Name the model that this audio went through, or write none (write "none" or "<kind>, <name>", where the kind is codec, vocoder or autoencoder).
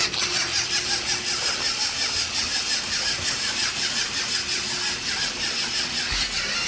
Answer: none